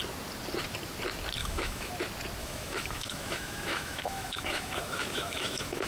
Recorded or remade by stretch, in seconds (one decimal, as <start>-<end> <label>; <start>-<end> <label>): 0.0-1.4 recorded; 1.4-1.9 remade; 1.9-2.4 recorded; 2.4-5.9 remade